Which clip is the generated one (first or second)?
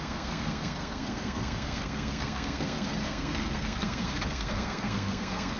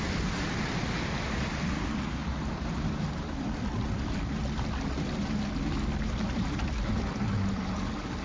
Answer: first